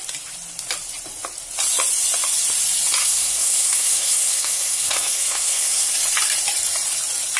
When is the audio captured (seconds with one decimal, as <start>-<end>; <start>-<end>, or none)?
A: 0.0-3.0; 5.9-7.4